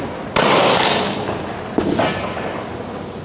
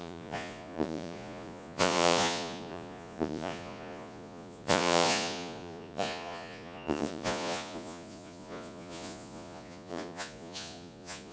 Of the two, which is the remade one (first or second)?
second